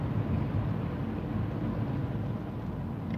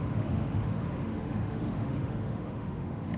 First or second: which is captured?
first